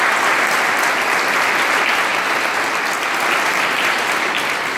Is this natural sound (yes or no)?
yes